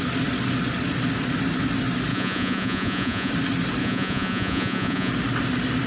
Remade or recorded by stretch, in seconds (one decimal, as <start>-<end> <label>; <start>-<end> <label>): 0.0-2.1 recorded; 2.1-3.3 remade; 3.3-3.8 recorded; 3.8-5.1 remade; 5.1-5.9 recorded